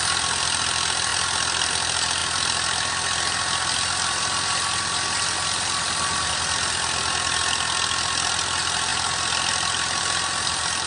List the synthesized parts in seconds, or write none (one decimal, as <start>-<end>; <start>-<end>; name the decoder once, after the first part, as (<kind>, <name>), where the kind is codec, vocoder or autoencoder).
none